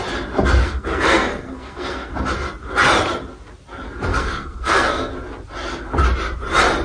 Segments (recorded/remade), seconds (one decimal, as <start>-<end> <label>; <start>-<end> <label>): 0.0-0.6 recorded; 0.6-2.1 remade; 2.1-4.1 recorded; 4.1-5.1 remade; 5.1-6.8 recorded